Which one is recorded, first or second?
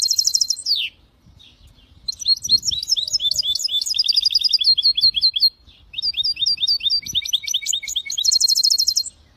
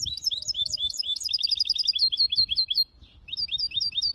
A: first